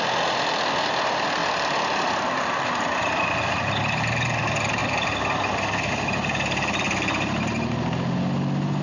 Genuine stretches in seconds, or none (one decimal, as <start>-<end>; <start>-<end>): 0.0-1.4; 4.0-8.8